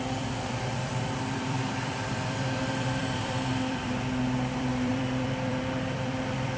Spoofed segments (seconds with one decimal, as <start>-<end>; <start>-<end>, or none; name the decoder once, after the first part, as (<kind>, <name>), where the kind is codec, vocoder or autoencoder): 0.0-6.6 (vocoder, BigVGAN v2)